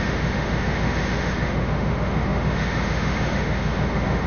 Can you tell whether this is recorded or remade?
remade